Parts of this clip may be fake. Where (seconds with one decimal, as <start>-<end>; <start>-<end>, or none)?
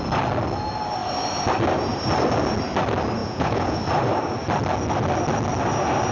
3.2-3.8